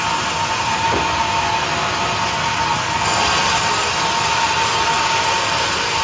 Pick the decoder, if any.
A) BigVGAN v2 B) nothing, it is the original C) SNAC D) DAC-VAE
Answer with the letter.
B